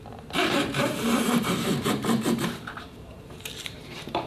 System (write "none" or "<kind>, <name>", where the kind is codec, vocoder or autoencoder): vocoder, BigVGAN v2